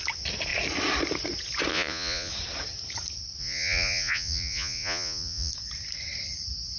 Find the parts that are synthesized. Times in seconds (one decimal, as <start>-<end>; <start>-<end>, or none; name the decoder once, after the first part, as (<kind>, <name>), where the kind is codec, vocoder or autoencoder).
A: 1.7-2.3 (vocoder, Vocos); 3.4-5.5